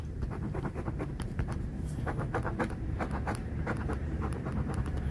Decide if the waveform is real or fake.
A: fake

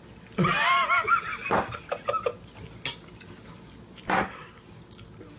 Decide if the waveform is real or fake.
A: real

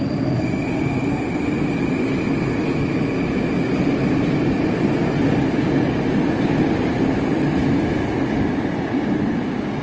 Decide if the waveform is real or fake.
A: real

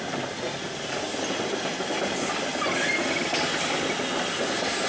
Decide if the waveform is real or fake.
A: real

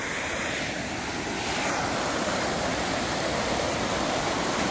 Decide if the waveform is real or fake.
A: real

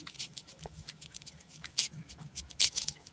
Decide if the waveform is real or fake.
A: fake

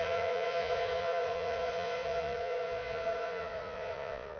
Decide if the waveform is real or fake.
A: fake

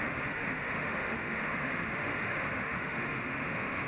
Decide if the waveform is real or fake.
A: fake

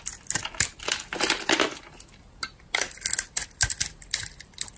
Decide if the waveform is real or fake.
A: real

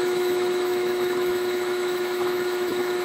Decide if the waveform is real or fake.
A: fake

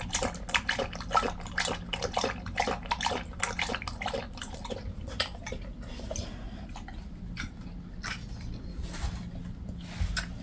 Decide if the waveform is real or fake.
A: real